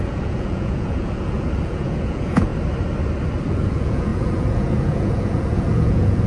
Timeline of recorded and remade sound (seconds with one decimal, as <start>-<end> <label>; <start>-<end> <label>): 0.0-2.5 remade; 2.5-3.4 recorded; 3.4-6.3 remade